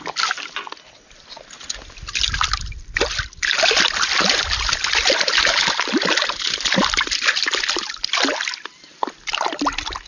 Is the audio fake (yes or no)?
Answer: no